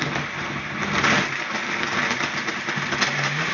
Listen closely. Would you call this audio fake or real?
real